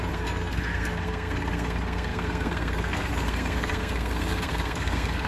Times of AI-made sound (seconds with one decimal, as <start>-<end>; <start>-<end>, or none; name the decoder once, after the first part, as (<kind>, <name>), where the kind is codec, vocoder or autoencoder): 0.0-5.3 (codec, SNAC)